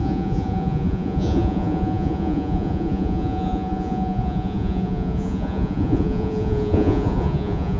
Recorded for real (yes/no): no